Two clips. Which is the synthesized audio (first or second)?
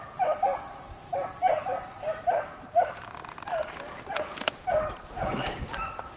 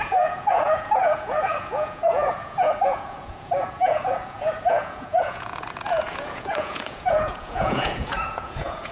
second